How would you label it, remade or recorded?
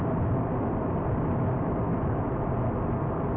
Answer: recorded